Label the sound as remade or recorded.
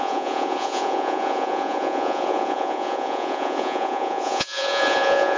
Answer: remade